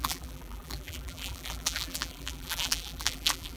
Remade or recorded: remade